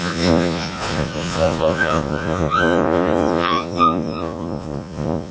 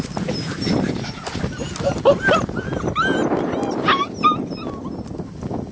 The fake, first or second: first